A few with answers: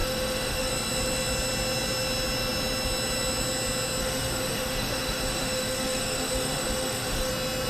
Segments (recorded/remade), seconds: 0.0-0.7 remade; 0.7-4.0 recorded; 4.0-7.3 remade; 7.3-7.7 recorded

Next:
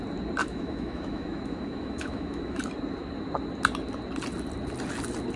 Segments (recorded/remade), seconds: 0.0-0.4 recorded; 0.4-2.6 remade; 2.6-5.4 recorded

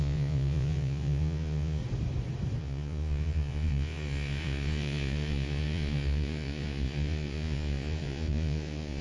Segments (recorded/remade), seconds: 0.0-1.8 remade; 1.8-2.6 recorded; 2.6-9.0 remade

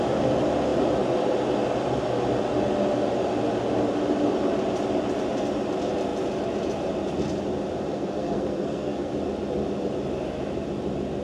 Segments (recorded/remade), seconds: 0.0-7.9 recorded; 7.9-9.1 remade; 9.1-11.2 recorded

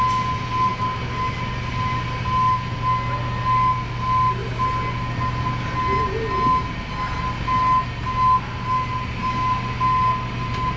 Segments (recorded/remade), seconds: 0.0-10.8 recorded